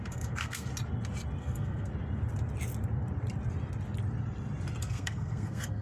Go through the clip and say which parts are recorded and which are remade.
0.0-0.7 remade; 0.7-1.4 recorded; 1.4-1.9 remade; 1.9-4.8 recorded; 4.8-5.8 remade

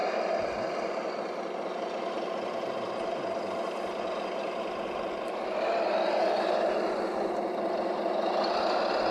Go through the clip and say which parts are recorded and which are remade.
0.0-9.1 recorded

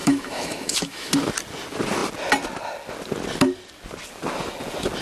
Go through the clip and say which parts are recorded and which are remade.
0.0-1.1 remade; 1.1-5.0 recorded